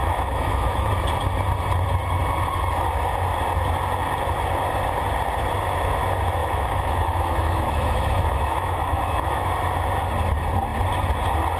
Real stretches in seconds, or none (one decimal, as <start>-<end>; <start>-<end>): 0.9-6.4; 9.4-11.6